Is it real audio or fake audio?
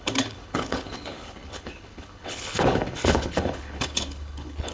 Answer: fake